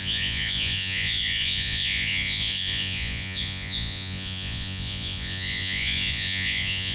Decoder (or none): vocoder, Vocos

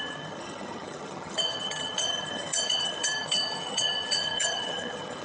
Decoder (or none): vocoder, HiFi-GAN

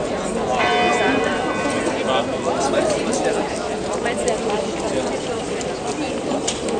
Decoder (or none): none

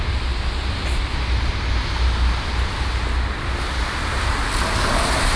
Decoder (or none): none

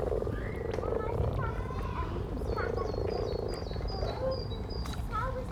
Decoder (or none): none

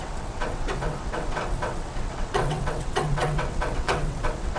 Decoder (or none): vocoder, WaveNeXt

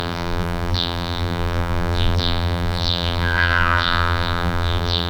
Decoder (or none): vocoder, BigVGAN v2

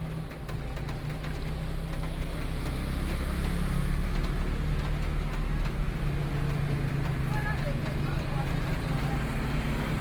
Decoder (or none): none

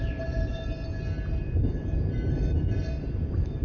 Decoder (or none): none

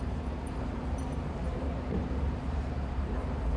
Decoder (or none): vocoder, BigVGAN v2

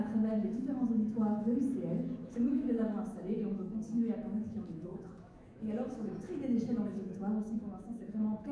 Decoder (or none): autoencoder, DAC-VAE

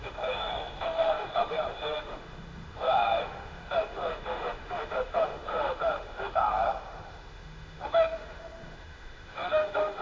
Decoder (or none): autoencoder, DAC-VAE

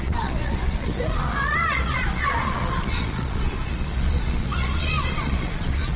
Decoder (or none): vocoder, Vocos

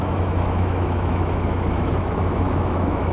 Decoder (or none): autoencoder, DAC-VAE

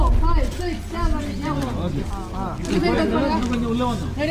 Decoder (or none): none